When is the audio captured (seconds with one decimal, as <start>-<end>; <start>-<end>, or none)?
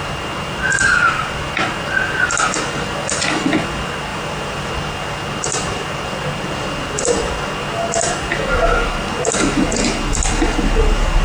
0.0-4.1; 4.7-11.2